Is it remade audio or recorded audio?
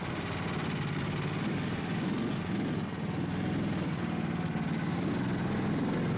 recorded